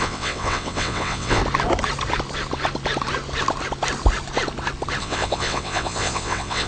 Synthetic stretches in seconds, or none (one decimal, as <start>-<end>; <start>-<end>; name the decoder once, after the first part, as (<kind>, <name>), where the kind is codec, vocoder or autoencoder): 0.0-1.4 (vocoder, WaveNeXt); 5.0-6.7